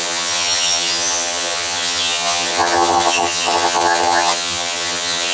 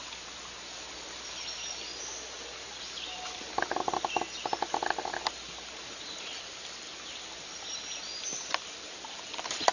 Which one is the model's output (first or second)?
first